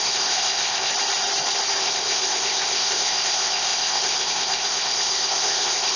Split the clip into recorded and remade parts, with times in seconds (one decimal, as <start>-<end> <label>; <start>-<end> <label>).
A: 0.0-0.9 remade; 0.9-1.8 recorded; 1.8-6.0 remade